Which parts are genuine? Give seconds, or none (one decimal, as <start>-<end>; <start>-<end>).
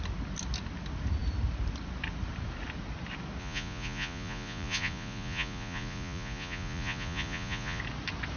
0.0-3.4; 7.8-8.4